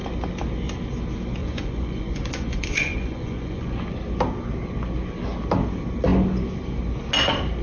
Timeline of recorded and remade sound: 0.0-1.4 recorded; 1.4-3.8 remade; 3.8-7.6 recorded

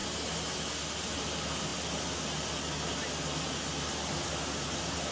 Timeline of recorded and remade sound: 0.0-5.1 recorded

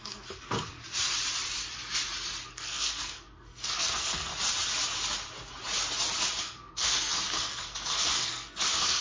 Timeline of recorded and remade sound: 0.0-0.8 remade; 0.8-2.5 recorded; 2.5-4.3 remade; 4.3-6.4 recorded; 6.4-9.0 remade

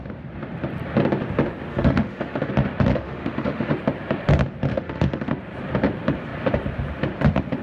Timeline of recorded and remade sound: 0.0-1.7 recorded; 1.7-2.5 remade; 2.5-2.9 recorded; 2.9-3.7 remade; 3.7-4.7 recorded; 4.7-5.3 remade; 5.3-7.6 recorded

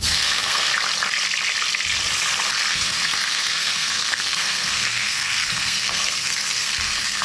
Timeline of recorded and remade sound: 0.0-0.7 remade; 0.7-2.7 recorded; 2.7-7.2 remade

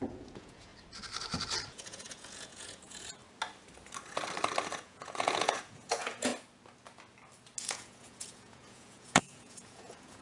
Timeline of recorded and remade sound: 0.0-0.7 remade; 0.7-1.7 recorded; 1.7-3.2 remade; 3.2-4.8 recorded; 4.8-6.3 remade; 6.3-7.6 recorded; 7.6-10.2 remade

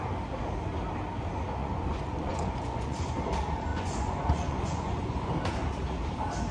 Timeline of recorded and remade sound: 0.0-1.6 recorded; 1.6-3.2 remade; 3.2-3.7 recorded; 3.7-5.3 remade; 5.3-6.5 recorded